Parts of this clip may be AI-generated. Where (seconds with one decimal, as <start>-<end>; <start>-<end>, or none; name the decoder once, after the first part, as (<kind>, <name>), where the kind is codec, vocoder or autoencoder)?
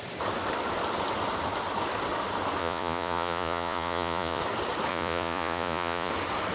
2.6-4.4 (vocoder, Vocos); 4.9-6.1